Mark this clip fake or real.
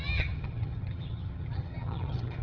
fake